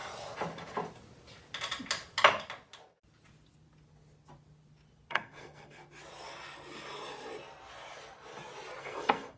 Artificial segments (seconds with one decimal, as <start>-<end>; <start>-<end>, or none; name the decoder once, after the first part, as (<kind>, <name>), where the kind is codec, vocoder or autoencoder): 5.1-5.8 (codec, SNAC); 8.8-9.4

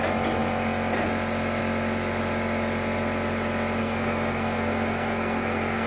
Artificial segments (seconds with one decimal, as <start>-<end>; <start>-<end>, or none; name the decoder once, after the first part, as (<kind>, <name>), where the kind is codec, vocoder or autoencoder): 3.8-5.9 (codec, SNAC)

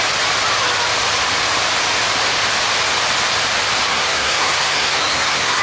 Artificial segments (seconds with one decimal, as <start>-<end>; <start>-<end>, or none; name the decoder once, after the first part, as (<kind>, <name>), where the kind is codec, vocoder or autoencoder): 3.9-5.6 (codec, SNAC)